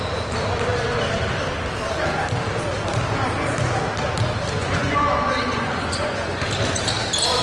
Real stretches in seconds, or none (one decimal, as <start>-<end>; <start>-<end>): 0.0-4.6; 6.5-7.4